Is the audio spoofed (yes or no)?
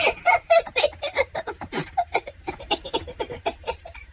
yes